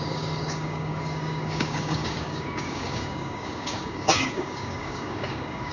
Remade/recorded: remade